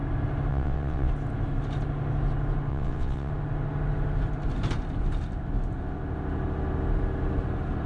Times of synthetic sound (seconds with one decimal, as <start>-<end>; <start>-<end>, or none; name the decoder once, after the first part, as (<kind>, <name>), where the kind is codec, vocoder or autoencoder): 0.5-1.1 (vocoder, WaveNeXt); 2.7-3.3